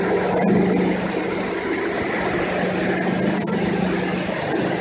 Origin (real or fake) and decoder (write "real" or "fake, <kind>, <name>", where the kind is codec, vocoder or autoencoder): real